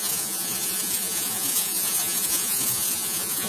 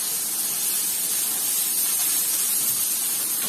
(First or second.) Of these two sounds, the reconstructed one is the first